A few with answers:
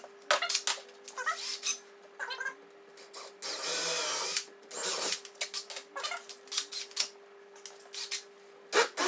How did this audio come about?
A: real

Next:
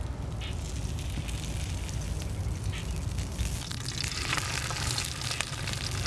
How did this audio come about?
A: real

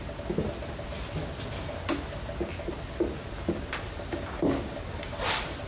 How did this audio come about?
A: real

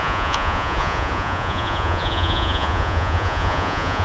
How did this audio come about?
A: fake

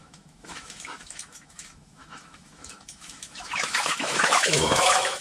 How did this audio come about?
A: fake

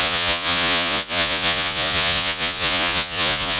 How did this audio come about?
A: fake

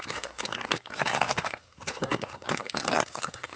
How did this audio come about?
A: fake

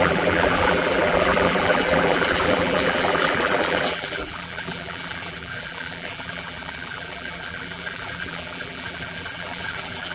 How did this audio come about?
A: fake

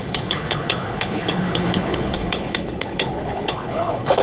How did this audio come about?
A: fake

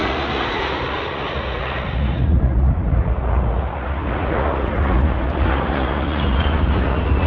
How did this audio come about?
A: fake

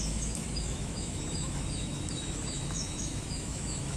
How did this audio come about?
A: fake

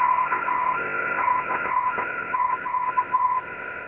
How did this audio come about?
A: fake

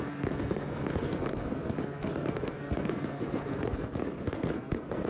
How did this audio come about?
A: fake